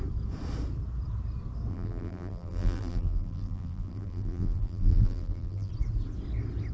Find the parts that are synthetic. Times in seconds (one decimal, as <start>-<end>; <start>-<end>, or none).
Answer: 1.7-5.7